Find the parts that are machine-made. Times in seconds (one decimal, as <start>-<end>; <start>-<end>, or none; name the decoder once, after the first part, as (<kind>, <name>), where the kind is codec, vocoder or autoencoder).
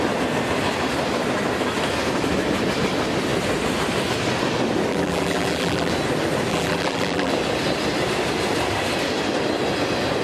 4.9-5.9 (vocoder, BigVGAN v2); 6.5-7.3